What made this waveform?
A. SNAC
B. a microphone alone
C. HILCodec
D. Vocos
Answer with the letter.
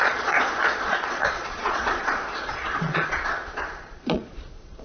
D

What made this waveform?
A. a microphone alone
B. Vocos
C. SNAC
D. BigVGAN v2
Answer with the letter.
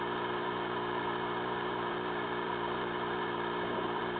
D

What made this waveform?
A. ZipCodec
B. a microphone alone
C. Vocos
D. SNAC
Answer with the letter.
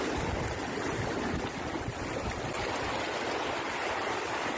B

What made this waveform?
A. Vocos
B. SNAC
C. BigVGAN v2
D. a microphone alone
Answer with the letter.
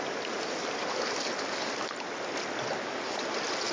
D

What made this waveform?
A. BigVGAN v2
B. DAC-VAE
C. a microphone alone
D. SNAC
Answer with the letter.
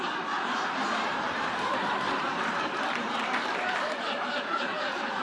A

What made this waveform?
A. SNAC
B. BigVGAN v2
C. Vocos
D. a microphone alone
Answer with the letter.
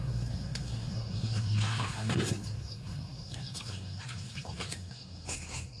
A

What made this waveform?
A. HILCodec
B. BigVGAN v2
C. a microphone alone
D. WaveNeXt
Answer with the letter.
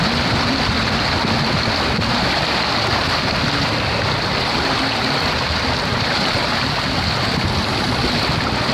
C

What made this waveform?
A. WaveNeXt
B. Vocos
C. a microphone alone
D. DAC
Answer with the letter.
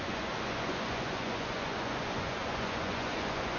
B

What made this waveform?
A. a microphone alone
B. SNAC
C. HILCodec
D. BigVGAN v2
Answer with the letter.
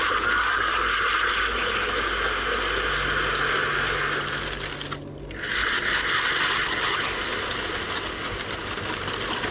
A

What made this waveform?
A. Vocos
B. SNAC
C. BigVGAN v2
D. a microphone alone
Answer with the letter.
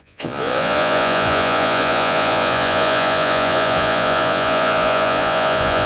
A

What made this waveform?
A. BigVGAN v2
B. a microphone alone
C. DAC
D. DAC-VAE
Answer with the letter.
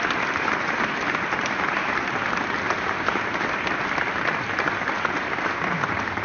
B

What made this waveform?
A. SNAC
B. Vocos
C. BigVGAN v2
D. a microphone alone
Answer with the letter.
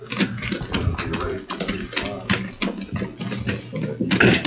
D